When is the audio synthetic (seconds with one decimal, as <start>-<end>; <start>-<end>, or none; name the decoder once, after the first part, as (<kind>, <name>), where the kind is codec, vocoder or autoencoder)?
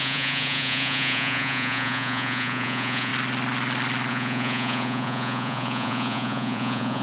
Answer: 0.0-3.1 (vocoder, Vocos); 4.1-7.0